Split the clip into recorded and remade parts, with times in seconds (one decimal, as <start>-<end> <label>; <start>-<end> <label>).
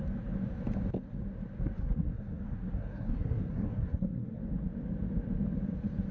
0.0-1.8 recorded; 1.8-4.4 remade; 4.4-6.1 recorded